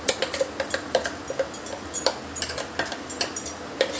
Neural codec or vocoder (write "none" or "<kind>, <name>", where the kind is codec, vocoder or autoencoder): none